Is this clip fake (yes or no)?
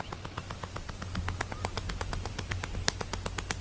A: no